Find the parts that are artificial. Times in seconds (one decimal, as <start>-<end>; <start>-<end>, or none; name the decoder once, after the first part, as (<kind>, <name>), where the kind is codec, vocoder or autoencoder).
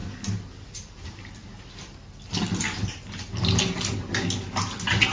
none